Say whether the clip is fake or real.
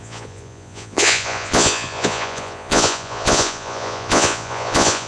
fake